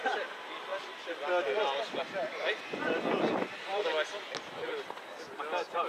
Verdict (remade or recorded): recorded